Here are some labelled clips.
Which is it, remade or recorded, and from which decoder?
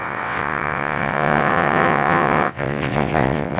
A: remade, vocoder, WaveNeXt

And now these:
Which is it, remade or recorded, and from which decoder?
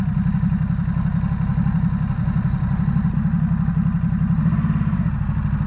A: recorded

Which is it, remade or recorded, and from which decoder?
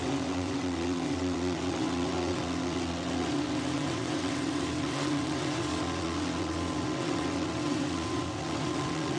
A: remade, vocoder, WaveNeXt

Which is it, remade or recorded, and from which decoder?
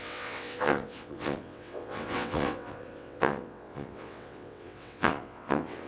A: remade, vocoder, WaveNeXt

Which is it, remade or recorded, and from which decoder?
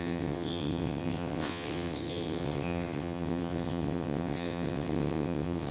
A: remade, vocoder, WaveNeXt